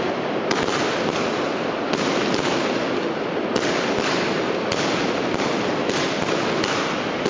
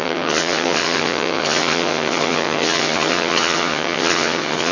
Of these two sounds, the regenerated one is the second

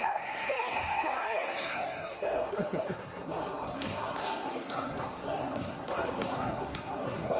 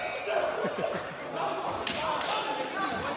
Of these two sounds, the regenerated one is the first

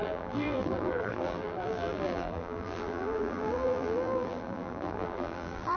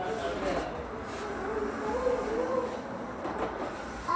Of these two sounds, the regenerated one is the first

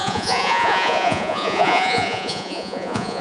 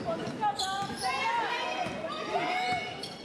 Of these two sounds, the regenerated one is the first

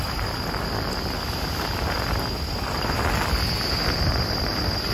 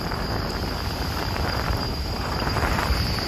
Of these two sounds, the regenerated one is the second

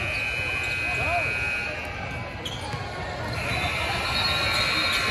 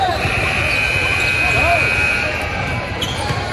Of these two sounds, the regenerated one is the second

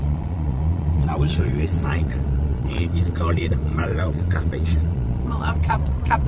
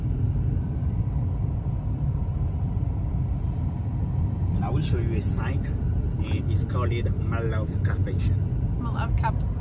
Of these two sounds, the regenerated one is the first